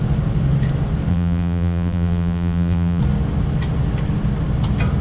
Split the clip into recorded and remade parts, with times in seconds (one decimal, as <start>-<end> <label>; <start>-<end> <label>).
0.0-1.1 recorded; 1.1-3.0 remade; 3.0-5.0 recorded